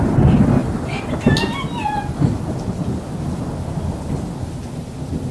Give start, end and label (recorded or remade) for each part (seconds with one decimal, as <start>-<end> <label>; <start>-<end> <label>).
0.0-0.6 recorded; 0.6-1.2 remade; 1.2-5.3 recorded